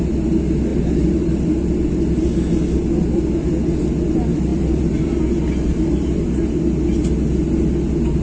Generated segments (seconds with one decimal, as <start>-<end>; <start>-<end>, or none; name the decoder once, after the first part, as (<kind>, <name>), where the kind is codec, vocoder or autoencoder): 0.7-1.5 (vocoder, BigVGAN v2); 4.5-5.2; 5.7-6.6